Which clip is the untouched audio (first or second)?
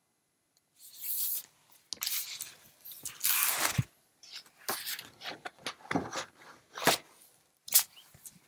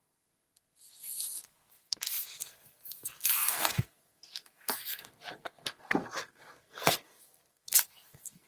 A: first